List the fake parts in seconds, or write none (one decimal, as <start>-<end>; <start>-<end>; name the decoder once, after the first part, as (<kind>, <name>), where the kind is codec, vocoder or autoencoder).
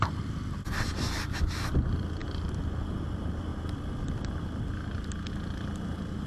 none